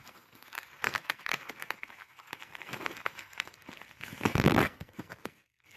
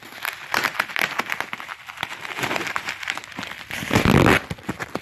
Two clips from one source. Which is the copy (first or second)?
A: first